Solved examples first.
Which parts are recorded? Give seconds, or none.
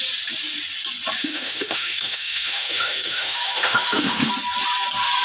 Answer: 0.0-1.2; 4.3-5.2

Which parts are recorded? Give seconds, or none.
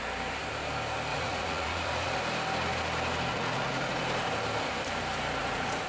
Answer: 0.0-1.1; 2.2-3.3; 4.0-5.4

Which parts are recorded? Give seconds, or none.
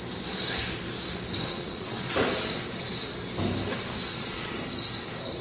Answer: 0.0-1.5; 2.1-4.1; 4.6-5.4